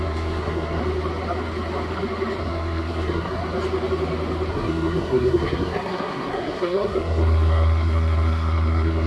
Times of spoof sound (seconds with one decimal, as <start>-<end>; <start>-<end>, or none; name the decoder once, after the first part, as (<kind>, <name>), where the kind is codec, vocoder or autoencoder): 0.0-0.8 (codec, SNAC); 2.4-3.4; 4.5-9.1